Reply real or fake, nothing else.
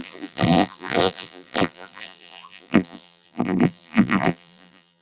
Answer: fake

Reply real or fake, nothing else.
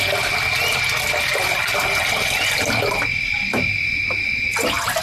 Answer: real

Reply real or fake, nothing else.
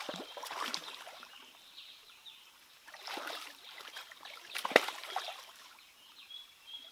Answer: fake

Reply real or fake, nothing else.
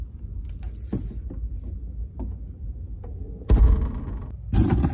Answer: real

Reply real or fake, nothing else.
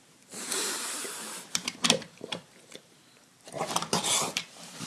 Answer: fake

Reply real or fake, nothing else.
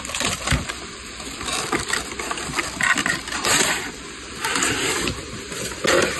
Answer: fake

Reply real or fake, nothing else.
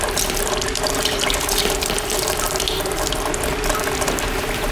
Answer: real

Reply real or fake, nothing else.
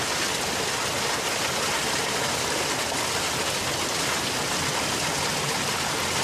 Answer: real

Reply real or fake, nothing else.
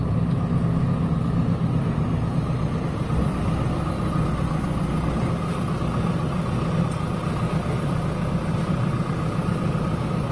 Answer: real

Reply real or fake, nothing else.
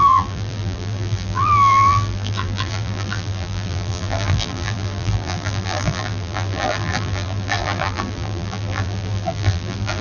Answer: fake